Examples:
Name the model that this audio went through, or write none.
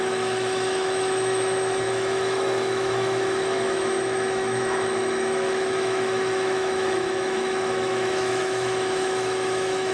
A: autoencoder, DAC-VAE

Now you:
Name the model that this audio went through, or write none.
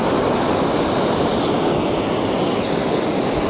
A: none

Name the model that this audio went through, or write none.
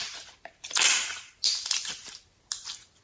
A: none